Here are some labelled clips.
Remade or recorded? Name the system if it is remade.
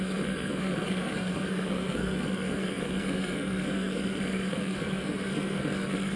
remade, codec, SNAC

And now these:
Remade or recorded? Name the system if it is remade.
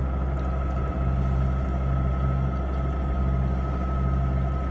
recorded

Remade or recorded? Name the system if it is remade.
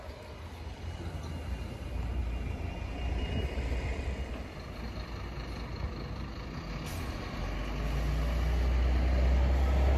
recorded